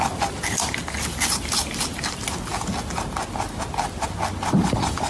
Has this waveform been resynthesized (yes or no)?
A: no